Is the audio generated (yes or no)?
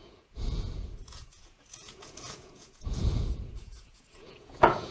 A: yes